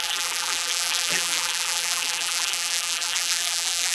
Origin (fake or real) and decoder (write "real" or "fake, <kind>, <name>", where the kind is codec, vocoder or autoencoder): fake, vocoder, BigVGAN v2